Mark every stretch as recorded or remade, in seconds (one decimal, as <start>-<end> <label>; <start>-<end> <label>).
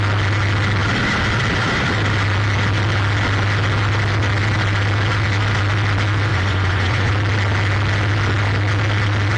0.0-6.3 recorded; 6.3-7.1 remade; 7.1-9.4 recorded